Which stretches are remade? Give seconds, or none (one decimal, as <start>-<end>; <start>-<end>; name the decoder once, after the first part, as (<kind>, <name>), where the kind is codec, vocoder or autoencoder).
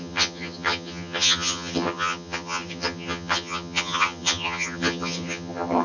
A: 0.0-5.8 (vocoder, HiFi-GAN)